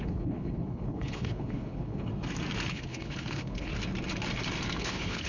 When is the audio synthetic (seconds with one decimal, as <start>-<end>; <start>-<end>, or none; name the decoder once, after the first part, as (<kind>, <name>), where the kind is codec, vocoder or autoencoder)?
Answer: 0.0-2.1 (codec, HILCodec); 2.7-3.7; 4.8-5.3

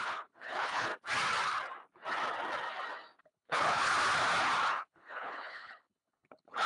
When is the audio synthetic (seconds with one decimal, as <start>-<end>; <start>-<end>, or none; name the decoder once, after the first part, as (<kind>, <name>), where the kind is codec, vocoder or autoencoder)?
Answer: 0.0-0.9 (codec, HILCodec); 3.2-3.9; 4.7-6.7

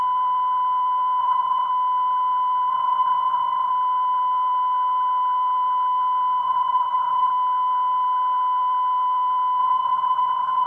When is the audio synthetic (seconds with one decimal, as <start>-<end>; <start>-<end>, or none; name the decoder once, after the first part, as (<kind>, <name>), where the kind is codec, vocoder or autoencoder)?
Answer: 1.2-1.7 (codec, HILCodec); 2.7-3.7; 6.4-7.3; 9.6-10.7

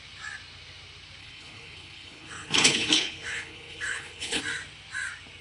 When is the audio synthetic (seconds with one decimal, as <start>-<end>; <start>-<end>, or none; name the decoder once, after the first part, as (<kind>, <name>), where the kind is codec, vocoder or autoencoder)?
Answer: 1.2-4.4 (codec, HILCodec)

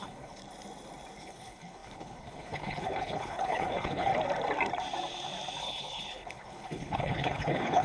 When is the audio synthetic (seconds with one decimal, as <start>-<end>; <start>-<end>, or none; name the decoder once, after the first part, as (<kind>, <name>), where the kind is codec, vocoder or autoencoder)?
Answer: 0.0-0.4 (codec, HILCodec); 1.2-4.1; 5.6-7.8

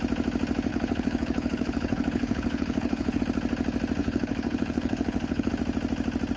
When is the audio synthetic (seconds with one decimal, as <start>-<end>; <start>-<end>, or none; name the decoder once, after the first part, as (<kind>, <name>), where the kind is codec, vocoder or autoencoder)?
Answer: 0.7-3.2 (codec, HILCodec); 4.0-5.5